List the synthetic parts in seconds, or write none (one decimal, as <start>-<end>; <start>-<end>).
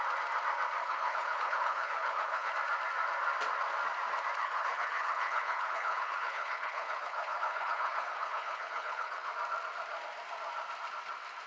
0.8-2.5; 4.4-9.3